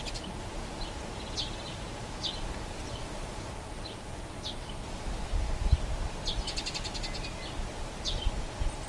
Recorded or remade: recorded